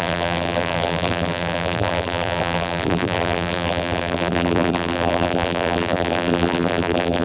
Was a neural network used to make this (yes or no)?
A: yes